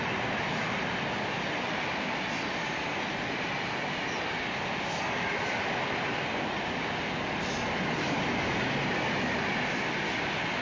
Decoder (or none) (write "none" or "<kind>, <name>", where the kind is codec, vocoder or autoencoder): none